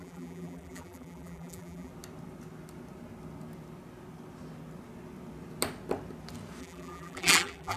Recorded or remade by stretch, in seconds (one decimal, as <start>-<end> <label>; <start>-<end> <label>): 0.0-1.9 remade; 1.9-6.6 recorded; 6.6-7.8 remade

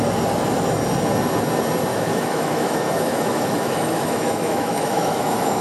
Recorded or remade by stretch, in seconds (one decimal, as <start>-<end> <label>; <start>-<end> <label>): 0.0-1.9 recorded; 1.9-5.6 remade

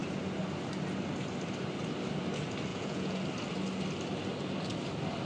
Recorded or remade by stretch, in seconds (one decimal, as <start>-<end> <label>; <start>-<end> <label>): 0.0-2.7 recorded; 2.7-3.2 remade; 3.2-5.3 recorded

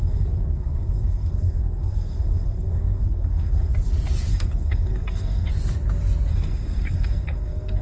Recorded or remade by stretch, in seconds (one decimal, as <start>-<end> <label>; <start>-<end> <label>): 0.0-3.7 remade; 3.7-4.3 recorded; 4.3-5.5 remade; 5.5-6.3 recorded; 6.3-7.8 remade